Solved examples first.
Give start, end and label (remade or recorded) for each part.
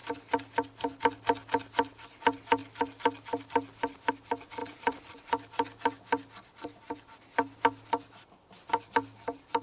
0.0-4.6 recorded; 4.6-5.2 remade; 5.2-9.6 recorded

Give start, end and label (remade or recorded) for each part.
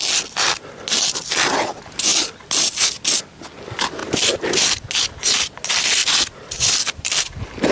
0.0-6.0 recorded; 6.0-7.7 remade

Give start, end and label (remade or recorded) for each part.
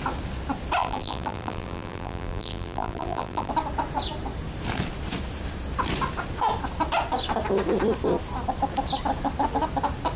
0.0-0.8 recorded; 0.8-3.5 remade; 3.5-10.2 recorded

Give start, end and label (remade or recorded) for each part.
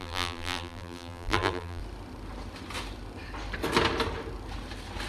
0.0-1.8 remade; 1.8-5.1 recorded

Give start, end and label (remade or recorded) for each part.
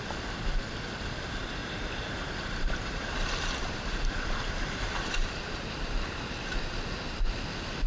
0.0-1.6 recorded; 1.6-6.3 remade; 6.3-7.9 recorded